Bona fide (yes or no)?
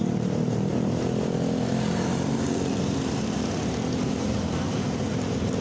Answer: no